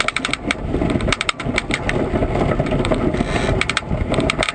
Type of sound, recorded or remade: recorded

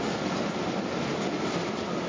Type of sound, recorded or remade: recorded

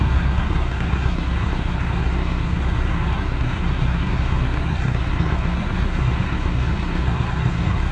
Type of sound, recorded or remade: remade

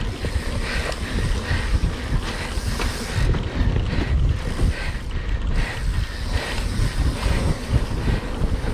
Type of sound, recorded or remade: recorded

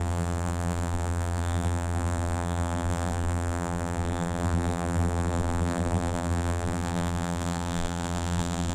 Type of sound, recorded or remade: remade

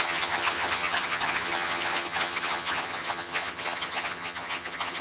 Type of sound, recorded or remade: remade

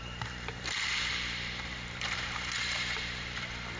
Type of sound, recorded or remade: remade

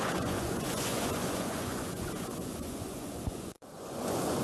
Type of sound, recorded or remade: remade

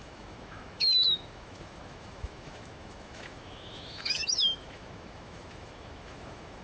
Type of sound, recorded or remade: remade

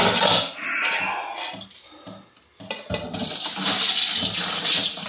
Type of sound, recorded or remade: recorded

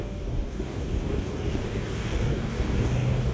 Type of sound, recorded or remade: remade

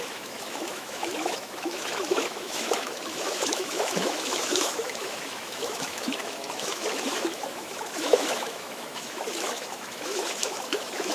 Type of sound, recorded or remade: remade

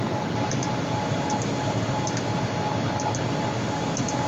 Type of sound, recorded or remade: remade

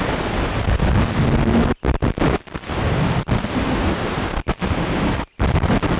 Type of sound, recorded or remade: recorded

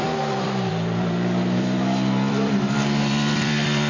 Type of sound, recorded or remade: remade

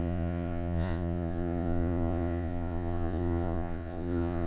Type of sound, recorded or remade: remade